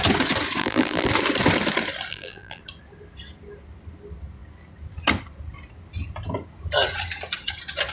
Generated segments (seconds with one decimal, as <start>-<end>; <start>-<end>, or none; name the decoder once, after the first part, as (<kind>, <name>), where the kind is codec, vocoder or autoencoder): 0.6-1.1 (vocoder, BigVGAN v2); 2.1-2.6